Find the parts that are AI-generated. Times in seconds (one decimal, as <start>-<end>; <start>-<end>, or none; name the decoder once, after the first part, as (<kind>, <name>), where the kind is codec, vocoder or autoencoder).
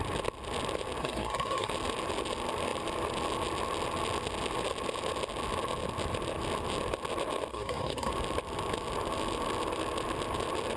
1.0-1.7 (codec, SNAC); 7.5-8.1